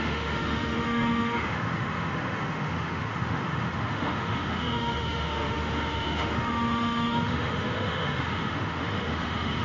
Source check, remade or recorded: remade